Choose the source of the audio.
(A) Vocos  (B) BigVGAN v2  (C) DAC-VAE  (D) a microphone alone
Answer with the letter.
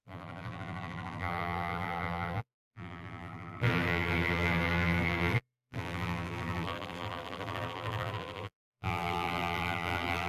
B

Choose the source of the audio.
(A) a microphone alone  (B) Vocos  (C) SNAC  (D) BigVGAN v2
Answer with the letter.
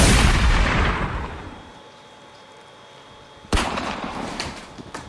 D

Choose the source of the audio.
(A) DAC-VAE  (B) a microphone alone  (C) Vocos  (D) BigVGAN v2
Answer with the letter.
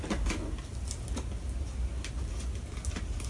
B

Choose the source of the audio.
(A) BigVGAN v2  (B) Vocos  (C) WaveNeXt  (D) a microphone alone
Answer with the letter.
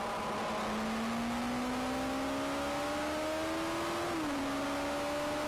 D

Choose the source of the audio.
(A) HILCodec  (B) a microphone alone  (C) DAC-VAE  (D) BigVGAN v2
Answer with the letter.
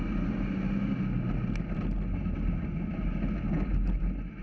B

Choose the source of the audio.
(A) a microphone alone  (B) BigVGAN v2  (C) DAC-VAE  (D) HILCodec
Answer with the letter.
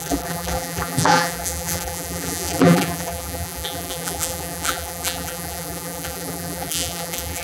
B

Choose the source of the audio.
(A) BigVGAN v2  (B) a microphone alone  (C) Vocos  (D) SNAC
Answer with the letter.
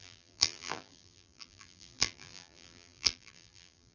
A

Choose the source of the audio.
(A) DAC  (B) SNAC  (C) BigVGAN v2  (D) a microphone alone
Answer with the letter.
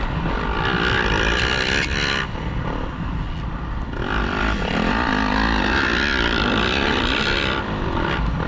C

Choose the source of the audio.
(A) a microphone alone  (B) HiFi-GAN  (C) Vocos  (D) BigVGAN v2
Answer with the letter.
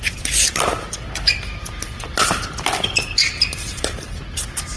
A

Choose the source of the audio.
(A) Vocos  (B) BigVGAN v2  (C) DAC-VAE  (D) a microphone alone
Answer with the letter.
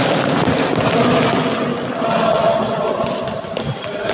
D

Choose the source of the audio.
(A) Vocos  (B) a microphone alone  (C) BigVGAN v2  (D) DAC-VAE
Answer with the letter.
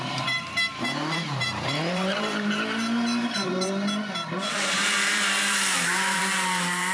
C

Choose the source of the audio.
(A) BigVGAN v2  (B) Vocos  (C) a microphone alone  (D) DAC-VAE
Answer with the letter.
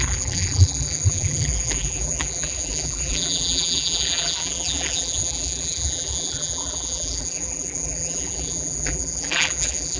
A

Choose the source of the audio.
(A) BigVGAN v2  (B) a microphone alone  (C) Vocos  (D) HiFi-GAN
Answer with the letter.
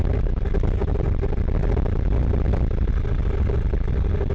B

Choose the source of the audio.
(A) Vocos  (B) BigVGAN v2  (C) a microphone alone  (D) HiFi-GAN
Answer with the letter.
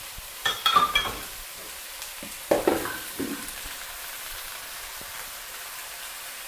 B